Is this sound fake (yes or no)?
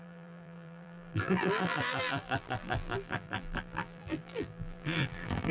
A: yes